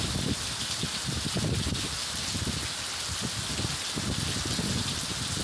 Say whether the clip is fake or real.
real